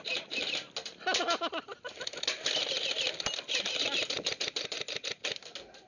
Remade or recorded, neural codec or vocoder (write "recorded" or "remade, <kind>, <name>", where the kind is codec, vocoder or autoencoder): recorded